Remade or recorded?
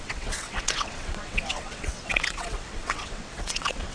remade